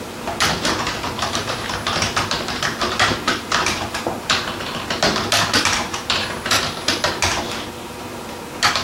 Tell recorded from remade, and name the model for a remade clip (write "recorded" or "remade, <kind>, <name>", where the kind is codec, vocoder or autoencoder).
remade, vocoder, BigVGAN v2